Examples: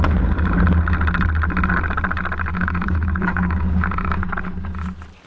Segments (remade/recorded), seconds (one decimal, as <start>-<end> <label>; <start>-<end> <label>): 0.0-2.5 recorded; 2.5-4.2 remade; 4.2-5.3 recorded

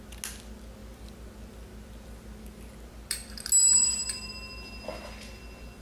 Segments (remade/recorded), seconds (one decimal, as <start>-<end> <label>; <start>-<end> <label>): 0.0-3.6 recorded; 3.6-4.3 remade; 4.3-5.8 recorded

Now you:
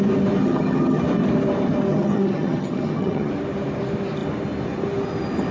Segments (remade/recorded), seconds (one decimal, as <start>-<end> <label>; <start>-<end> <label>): 0.0-0.4 recorded; 0.4-1.0 remade; 1.0-1.9 recorded; 1.9-3.3 remade; 3.3-5.5 recorded